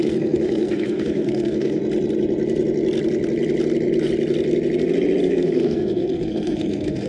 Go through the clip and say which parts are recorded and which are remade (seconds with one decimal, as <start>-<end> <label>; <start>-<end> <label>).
0.0-1.8 remade; 1.8-5.3 recorded; 5.3-7.1 remade